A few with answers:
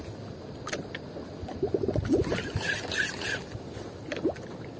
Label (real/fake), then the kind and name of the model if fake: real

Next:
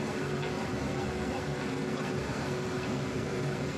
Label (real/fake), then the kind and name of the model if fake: fake, codec, SNAC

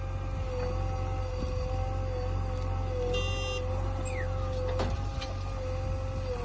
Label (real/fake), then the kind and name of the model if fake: real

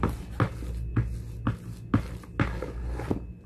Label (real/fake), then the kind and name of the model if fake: real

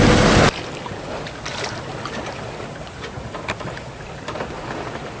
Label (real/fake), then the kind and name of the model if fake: real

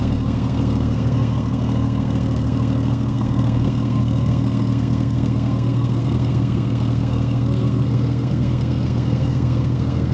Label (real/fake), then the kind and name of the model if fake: fake, codec, SNAC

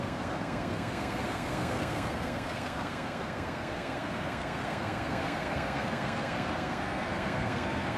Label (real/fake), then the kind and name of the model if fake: fake, codec, SNAC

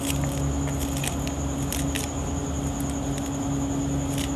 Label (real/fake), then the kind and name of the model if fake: real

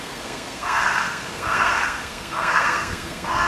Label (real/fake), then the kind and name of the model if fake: fake, codec, SNAC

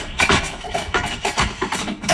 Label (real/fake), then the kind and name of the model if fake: fake, codec, SNAC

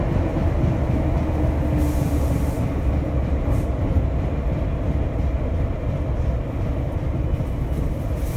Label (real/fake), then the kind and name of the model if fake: real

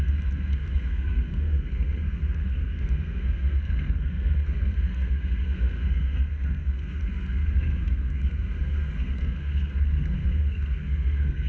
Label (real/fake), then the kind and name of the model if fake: fake, codec, SNAC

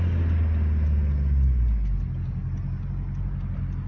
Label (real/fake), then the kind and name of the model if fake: real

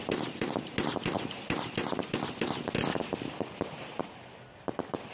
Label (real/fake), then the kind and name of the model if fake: real